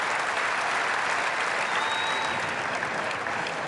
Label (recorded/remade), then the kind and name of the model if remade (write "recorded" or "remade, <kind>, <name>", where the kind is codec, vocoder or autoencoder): recorded